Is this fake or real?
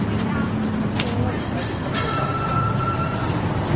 real